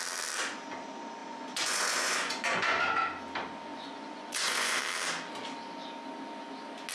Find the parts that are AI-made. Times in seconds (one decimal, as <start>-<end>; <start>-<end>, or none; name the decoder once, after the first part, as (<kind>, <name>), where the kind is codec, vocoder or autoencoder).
1.2-2.8 (vocoder, Vocos); 3.7-4.8